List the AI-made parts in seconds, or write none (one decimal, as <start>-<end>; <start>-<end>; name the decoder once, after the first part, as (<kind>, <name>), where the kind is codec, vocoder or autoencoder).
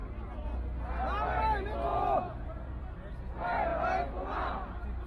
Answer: 1.9-2.8 (vocoder, Vocos)